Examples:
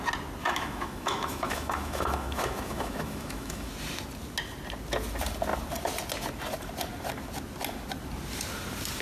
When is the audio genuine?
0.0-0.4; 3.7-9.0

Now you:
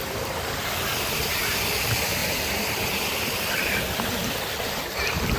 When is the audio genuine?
0.0-5.4

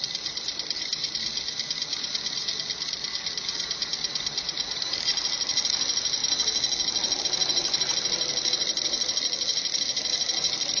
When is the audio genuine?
0.0-10.8

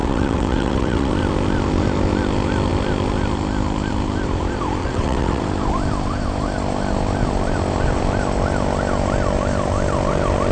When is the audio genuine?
1.1-4.8; 5.4-10.5

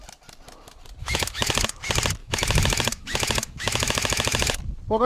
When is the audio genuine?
0.0-1.0; 1.6-2.2; 4.6-5.0